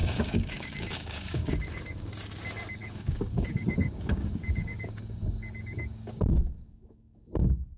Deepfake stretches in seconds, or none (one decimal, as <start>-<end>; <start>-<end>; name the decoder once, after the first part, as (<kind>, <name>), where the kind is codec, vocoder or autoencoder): 0.0-2.1 (codec, DAC); 2.8-7.8